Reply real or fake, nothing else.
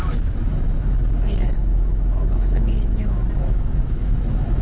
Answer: fake